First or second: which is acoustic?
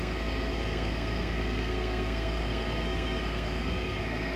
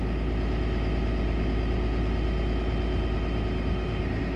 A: second